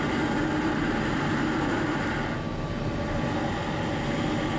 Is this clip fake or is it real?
real